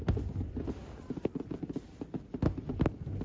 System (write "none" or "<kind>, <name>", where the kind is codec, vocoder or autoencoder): none